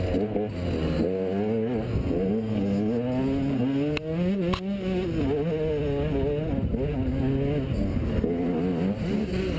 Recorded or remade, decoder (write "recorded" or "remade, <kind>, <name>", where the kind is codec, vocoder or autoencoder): recorded